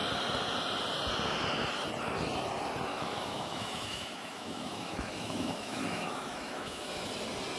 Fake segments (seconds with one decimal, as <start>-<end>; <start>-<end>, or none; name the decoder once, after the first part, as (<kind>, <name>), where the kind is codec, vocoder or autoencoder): 2.9-7.1 (autoencoder, DAC-VAE)